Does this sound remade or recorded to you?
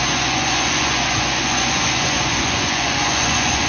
remade